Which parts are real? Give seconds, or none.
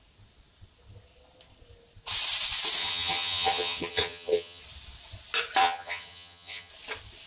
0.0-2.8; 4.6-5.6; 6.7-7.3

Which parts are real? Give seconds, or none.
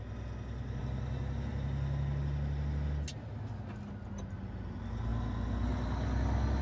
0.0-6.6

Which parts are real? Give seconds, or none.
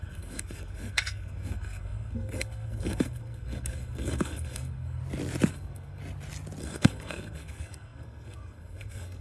5.0-5.5; 6.0-6.6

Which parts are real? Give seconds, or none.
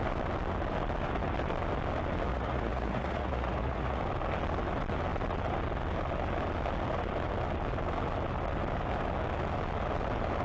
0.0-2.3; 4.0-10.4